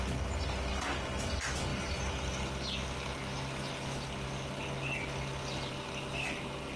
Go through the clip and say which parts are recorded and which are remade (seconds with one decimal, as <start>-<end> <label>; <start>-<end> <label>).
0.0-6.8 recorded